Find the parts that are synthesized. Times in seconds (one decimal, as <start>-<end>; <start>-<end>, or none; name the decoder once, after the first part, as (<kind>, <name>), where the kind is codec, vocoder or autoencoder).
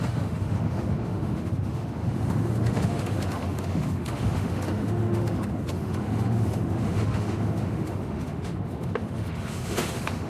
0.0-10.3 (autoencoder, DAC-VAE)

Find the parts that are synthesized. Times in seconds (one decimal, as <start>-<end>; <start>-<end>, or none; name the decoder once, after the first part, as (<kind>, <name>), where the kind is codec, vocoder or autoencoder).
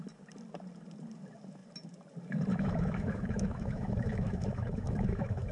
2.5-5.5 (autoencoder, DAC-VAE)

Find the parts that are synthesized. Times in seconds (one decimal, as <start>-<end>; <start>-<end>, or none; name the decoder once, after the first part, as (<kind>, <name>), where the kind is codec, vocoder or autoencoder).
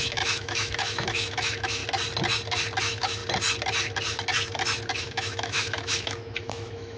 0.0-1.8 (autoencoder, DAC-VAE); 2.8-3.2; 5.0-7.0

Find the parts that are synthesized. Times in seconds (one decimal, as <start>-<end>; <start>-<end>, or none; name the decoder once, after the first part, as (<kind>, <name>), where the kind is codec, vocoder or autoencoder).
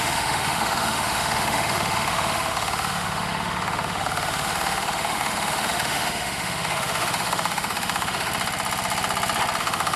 0.0-8.3 (autoencoder, DAC-VAE); 9.6-10.0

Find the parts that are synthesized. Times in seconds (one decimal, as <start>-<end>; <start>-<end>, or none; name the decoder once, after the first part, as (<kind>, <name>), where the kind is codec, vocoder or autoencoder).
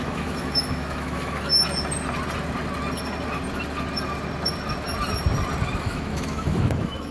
0.0-1.5 (autoencoder, DAC-VAE); 5.8-7.1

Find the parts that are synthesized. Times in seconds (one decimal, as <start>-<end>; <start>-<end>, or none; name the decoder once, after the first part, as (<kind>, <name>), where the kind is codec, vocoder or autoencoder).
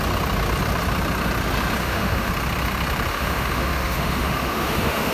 1.8-2.3 (autoencoder, DAC-VAE); 3.1-5.1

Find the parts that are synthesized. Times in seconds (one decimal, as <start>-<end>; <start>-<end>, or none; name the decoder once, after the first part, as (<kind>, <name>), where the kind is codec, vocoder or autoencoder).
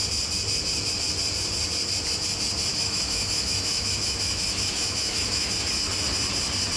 2.7-5.5 (autoencoder, DAC-VAE)